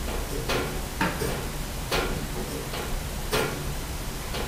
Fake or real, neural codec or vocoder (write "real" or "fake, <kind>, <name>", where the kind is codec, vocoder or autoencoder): real